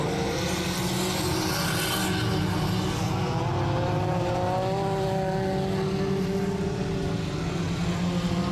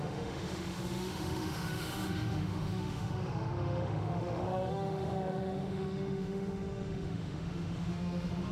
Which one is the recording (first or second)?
first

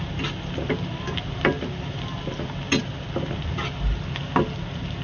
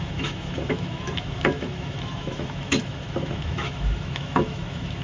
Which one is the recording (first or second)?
first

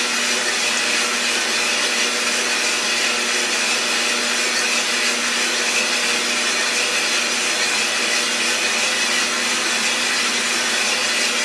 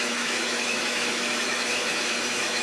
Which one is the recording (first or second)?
first